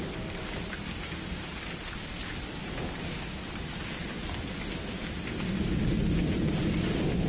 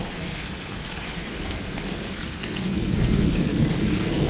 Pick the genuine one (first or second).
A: first